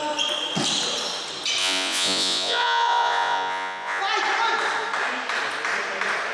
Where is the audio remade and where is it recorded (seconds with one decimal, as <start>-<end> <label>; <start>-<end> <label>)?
0.0-1.6 recorded; 1.6-4.0 remade; 4.0-6.3 recorded